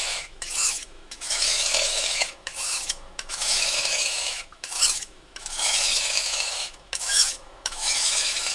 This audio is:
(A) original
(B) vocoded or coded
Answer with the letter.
B